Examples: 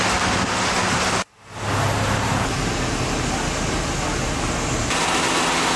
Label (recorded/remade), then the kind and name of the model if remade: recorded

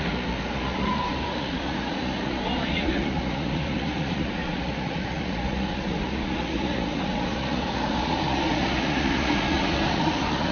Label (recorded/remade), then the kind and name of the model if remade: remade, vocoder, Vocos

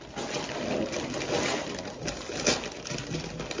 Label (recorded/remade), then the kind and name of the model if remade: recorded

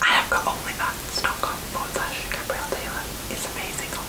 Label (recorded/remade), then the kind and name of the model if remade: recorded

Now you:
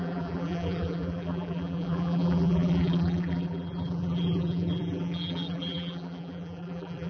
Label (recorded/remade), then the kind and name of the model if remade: remade, vocoder, BigVGAN v2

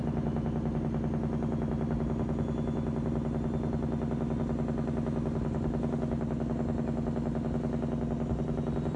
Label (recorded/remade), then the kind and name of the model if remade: recorded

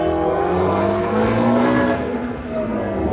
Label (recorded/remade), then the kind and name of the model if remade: remade, codec, SNAC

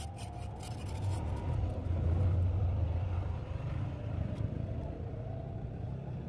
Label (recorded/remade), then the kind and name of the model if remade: recorded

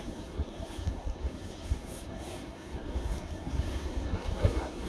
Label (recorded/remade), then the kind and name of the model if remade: remade, codec, SNAC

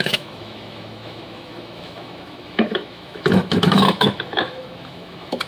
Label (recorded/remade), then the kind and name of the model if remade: remade, autoencoder, DAC-VAE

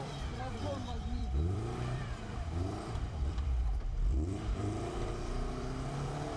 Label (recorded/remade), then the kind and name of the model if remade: remade, vocoder, BigVGAN v2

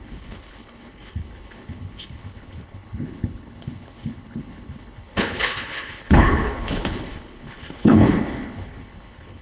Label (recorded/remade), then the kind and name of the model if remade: remade, codec, HILCodec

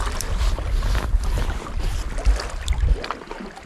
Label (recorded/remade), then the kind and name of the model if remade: recorded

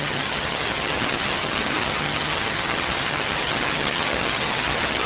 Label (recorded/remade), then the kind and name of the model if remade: remade, vocoder, HiFi-GAN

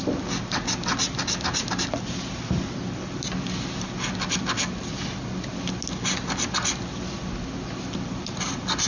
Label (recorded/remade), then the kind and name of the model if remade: recorded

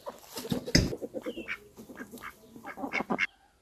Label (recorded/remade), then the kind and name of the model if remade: recorded